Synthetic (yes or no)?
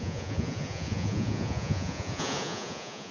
yes